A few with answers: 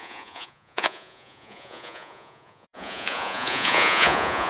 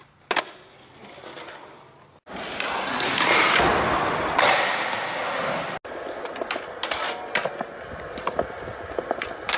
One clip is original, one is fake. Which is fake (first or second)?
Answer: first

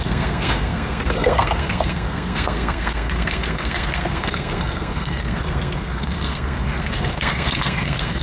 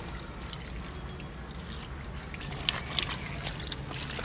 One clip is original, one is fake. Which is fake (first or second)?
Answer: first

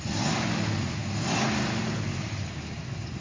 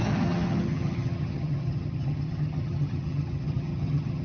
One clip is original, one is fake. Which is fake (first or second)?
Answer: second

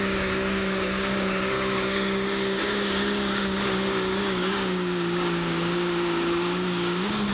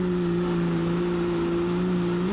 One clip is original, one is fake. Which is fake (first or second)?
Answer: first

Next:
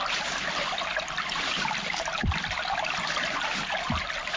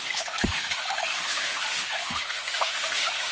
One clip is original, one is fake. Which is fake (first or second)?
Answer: second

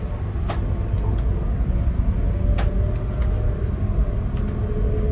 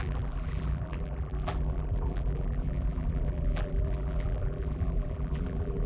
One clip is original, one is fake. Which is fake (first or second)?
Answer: second